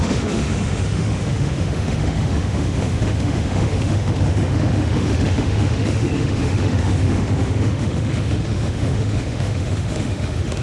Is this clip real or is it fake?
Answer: fake